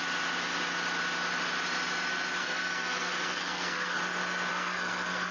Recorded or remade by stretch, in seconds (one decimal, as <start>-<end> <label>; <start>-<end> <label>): 0.0-2.4 recorded; 2.4-4.0 remade; 4.0-4.5 recorded; 4.5-5.3 remade